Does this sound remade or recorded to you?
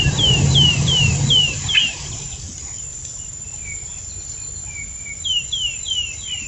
remade